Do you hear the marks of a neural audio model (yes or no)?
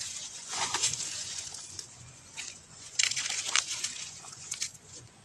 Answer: yes